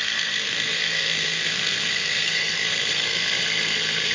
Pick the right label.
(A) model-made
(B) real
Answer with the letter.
A